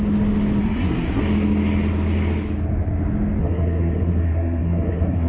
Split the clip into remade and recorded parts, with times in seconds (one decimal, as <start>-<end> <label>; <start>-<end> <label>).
0.0-0.6 recorded; 0.6-1.2 remade; 1.2-3.4 recorded; 3.4-5.3 remade